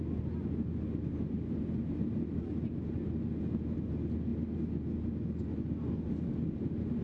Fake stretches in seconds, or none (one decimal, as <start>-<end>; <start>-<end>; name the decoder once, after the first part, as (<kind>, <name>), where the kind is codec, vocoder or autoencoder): none